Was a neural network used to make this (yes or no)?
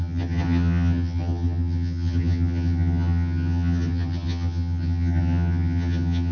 yes